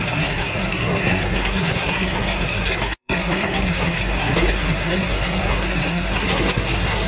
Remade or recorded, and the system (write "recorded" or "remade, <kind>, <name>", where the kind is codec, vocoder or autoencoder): remade, codec, SNAC